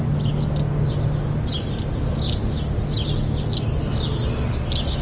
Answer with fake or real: real